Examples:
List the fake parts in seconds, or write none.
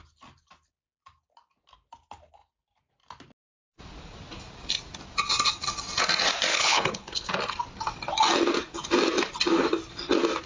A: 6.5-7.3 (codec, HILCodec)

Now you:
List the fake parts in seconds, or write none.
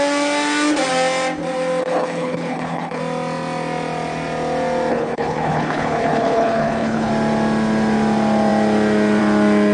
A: 1.8-3.0 (codec, HILCodec); 4.9-7.1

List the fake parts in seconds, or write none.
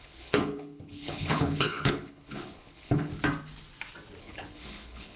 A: 0.0-3.1 (codec, HILCodec); 4.2-5.2